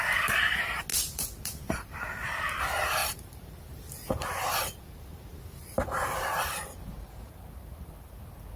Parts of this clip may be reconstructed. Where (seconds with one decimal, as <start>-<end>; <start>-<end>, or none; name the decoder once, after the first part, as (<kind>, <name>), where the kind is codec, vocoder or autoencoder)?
0.9-2.6 (vocoder, BigVGAN v2); 3.0-8.2

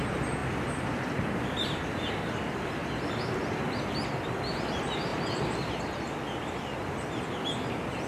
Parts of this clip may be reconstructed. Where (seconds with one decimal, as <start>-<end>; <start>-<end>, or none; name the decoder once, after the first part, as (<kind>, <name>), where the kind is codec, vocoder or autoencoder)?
0.4-3.1 (vocoder, BigVGAN v2); 5.1-5.8

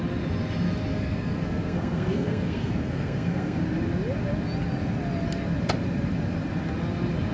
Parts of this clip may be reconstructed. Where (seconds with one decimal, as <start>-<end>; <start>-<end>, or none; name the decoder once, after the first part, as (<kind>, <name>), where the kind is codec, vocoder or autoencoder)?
0.9-3.6 (codec, SNAC)

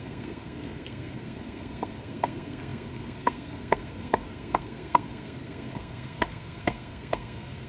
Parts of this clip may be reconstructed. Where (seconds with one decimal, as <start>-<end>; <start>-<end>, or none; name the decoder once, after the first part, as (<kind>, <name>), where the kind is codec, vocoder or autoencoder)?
0.0-7.7 (codec, SNAC)